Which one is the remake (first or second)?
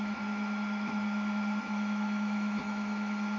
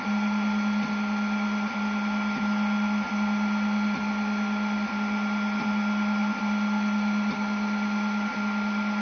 first